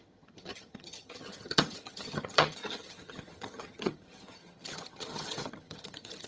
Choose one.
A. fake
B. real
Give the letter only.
A